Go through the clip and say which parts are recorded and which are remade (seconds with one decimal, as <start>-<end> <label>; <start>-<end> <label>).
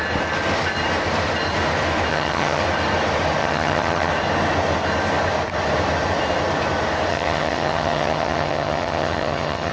0.0-2.1 recorded; 2.1-2.6 remade; 2.6-3.4 recorded; 3.4-4.1 remade; 4.1-7.1 recorded; 7.1-9.7 remade